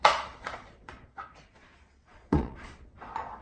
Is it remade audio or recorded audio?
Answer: remade